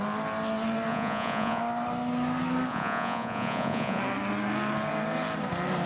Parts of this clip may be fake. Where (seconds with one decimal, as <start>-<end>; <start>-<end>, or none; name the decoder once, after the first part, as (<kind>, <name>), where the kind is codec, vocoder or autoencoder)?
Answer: 0.9-1.6 (vocoder, Vocos); 2.7-4.0